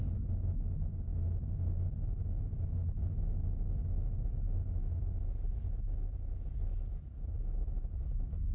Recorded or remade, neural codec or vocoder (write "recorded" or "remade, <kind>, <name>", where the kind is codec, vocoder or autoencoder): recorded